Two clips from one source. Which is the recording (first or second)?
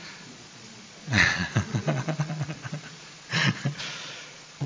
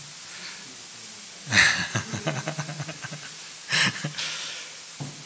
second